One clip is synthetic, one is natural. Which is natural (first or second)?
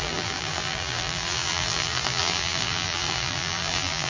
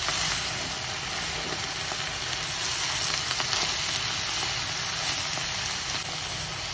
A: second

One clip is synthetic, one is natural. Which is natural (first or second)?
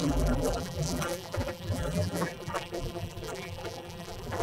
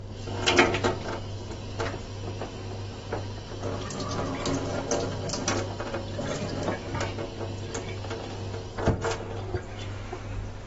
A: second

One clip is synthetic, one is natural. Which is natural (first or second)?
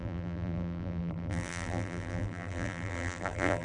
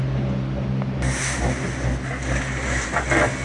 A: second